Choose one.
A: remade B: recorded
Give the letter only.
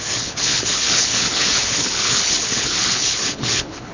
A